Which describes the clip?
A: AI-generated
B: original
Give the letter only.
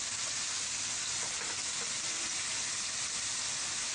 B